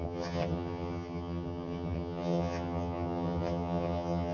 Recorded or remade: remade